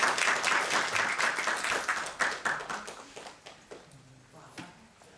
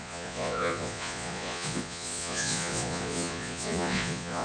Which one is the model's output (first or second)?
second